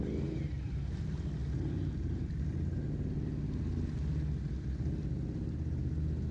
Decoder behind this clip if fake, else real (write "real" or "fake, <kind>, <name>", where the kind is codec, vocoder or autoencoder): real